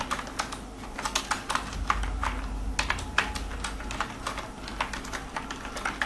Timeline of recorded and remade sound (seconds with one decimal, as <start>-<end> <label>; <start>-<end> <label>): 0.0-6.1 recorded